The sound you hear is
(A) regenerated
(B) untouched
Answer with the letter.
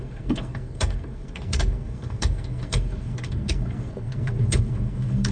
A